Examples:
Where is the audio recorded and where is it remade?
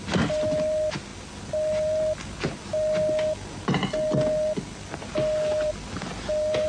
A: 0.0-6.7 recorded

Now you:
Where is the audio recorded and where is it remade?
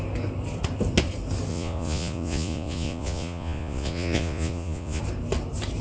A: 0.0-1.5 recorded; 1.5-5.0 remade; 5.0-5.8 recorded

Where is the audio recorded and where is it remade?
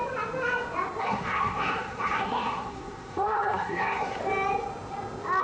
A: 0.0-1.0 recorded; 1.0-4.2 remade; 4.2-5.4 recorded